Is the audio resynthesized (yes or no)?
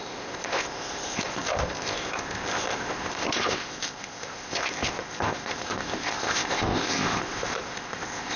yes